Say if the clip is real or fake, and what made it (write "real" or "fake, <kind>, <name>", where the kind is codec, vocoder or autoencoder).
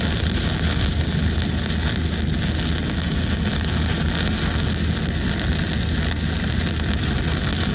real